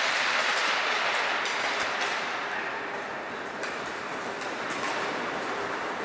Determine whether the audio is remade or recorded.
recorded